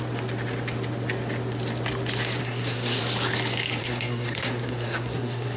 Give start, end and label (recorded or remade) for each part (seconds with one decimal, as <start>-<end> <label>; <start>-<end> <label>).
0.0-2.4 recorded; 2.4-3.0 remade; 3.0-3.8 recorded; 3.8-5.6 remade